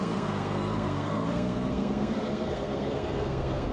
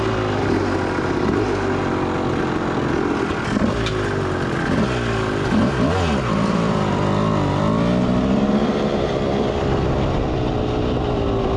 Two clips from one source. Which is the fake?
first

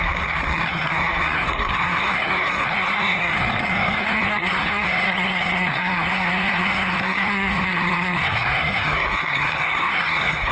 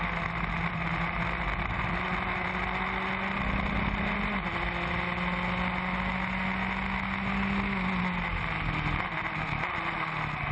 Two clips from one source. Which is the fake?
first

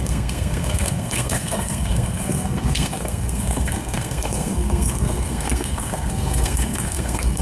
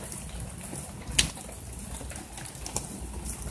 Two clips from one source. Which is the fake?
first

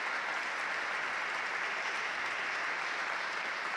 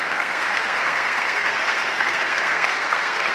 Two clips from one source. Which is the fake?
second